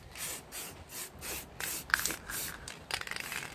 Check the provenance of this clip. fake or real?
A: real